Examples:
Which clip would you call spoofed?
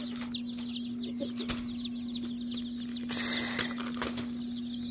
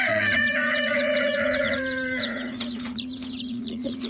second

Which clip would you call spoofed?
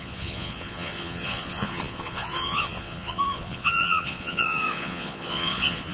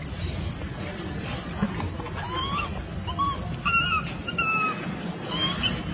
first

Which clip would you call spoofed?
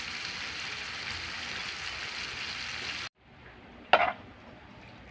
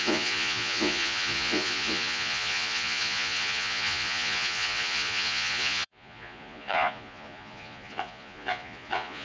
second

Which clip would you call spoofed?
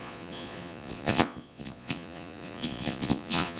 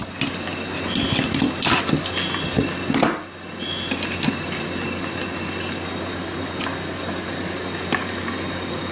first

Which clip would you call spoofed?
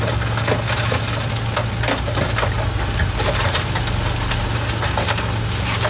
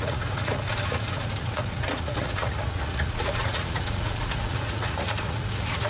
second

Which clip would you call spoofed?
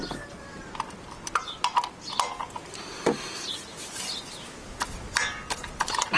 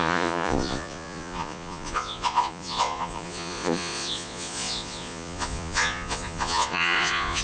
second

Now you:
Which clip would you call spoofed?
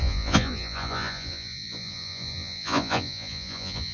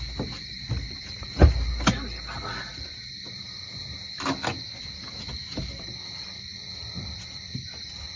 first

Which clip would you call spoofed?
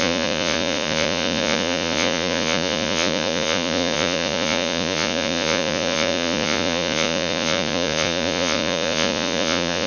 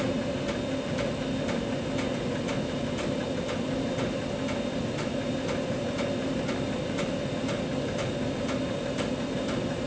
first